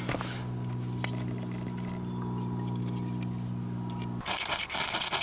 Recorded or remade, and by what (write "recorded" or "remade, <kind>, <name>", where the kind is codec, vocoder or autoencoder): recorded